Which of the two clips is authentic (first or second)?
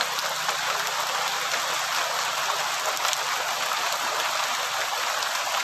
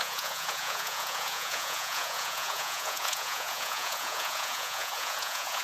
first